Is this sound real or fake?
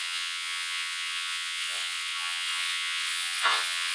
fake